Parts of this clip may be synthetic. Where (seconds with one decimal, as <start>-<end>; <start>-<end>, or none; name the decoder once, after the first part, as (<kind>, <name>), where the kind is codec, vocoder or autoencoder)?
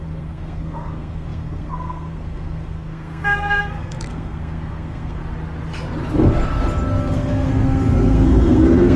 0.0-5.2 (codec, SNAC); 7.0-9.0